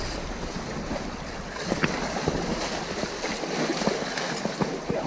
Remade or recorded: recorded